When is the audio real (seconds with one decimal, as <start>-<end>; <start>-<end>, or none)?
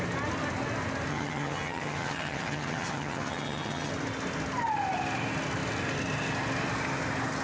0.0-1.1; 3.9-7.4